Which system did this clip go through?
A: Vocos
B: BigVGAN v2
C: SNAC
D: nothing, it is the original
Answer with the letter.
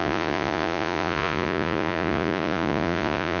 A